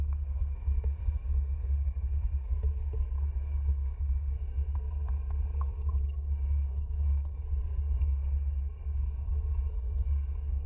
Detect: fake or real fake